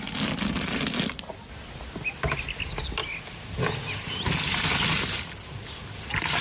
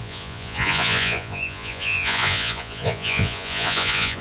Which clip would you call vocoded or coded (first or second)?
second